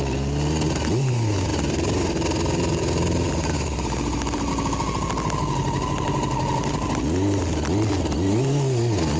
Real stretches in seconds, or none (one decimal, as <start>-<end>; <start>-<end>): 0.0-1.5; 4.5-9.2